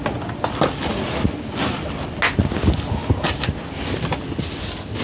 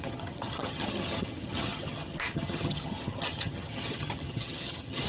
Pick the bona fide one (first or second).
first